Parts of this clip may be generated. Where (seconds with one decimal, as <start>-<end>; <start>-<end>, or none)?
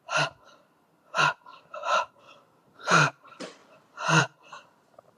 1.5-2.7; 3.6-4.2